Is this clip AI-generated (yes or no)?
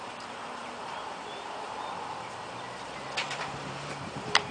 yes